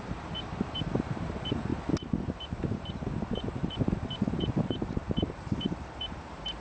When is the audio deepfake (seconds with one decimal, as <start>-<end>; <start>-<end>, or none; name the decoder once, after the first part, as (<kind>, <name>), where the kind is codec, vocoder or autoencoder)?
0.0-1.7 (vocoder, BigVGAN v2); 2.3-6.6